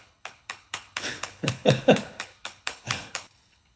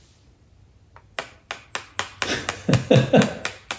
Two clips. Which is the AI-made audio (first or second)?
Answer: first